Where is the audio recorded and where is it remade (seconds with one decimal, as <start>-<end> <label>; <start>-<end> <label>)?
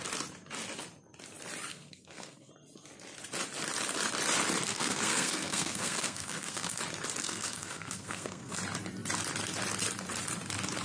0.0-1.7 recorded; 1.7-2.5 remade; 2.5-4.7 recorded; 4.7-6.8 remade; 6.8-7.2 recorded; 7.2-8.6 remade; 8.6-10.8 recorded